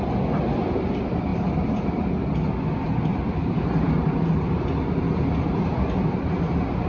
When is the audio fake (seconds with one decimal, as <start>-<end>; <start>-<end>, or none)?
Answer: 1.3-2.1; 3.1-4.6